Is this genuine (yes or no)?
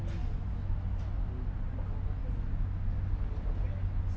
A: yes